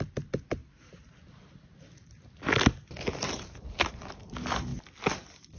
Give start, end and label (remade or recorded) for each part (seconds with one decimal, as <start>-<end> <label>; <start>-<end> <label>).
0.0-5.6 recorded